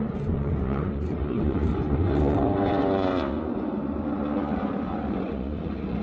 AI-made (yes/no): yes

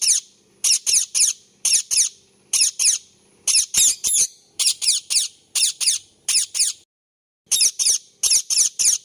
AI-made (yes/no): no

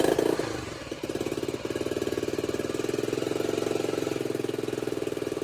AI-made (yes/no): no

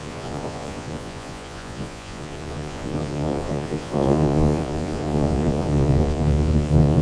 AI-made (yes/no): yes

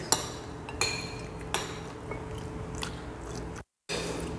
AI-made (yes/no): no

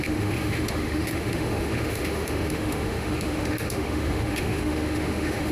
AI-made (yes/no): yes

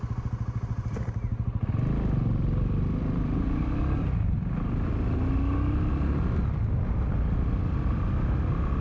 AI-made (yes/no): no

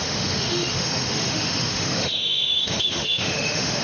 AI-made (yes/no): yes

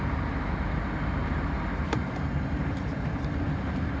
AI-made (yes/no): yes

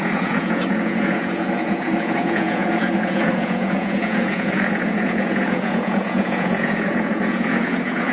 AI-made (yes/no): yes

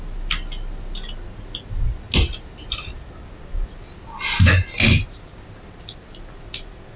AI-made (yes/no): no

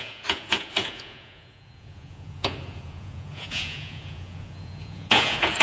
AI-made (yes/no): yes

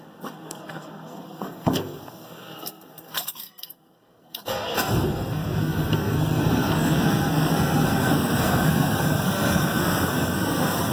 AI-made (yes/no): yes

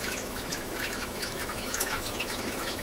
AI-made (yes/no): yes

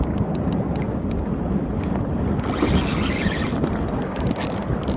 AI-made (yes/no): no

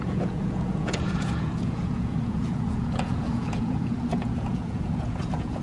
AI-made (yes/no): yes